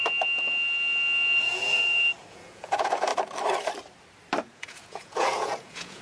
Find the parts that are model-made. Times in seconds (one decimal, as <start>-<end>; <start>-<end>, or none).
1.4-1.8; 2.3-3.1; 4.4-6.0

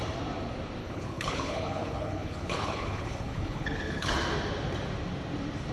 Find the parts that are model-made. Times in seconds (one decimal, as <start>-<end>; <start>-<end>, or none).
0.8-4.1